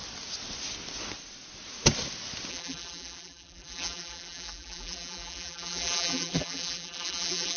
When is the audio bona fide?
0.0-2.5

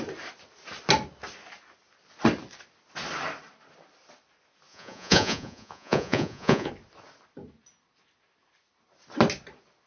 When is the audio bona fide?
0.0-4.7; 6.7-9.9

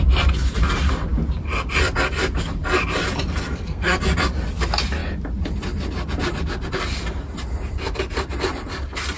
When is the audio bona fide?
0.0-3.5; 4.0-9.2

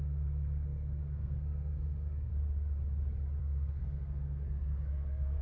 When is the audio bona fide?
2.3-3.4

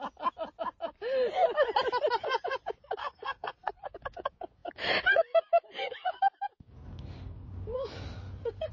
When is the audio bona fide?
0.0-3.0; 3.7-8.7

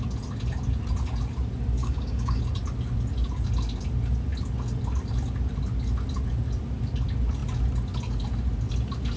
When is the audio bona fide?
0.0-1.8; 2.4-9.2

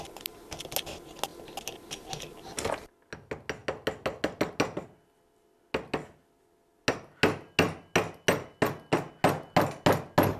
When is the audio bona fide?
0.0-10.4